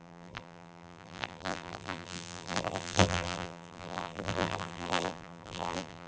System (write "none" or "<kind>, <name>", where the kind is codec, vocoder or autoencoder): vocoder, BigVGAN v2